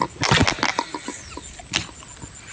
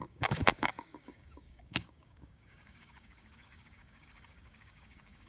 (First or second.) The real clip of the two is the first